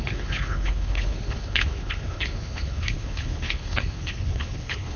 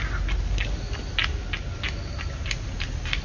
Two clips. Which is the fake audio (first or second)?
first